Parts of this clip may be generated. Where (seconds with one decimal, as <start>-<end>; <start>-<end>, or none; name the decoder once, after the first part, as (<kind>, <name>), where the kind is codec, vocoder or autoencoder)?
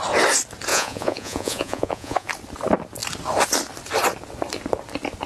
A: 0.7-2.3 (vocoder, Vocos)